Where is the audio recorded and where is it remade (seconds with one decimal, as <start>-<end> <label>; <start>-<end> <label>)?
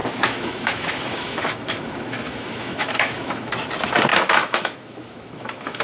0.0-3.5 remade; 3.5-4.1 recorded; 4.1-5.8 remade